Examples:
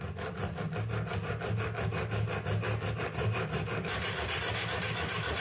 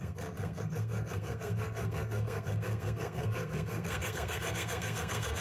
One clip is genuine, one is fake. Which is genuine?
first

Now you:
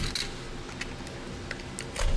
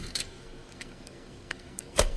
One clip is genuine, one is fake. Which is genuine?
first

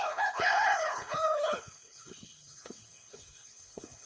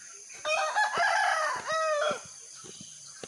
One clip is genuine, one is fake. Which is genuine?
second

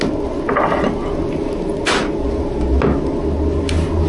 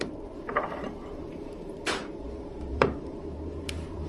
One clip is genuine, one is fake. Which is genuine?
first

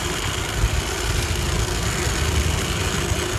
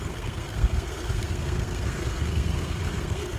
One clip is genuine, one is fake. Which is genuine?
first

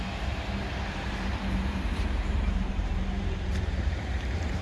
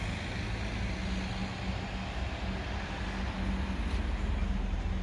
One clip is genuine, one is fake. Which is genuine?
second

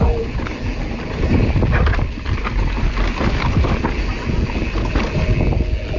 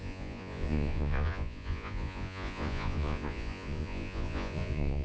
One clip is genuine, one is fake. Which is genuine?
first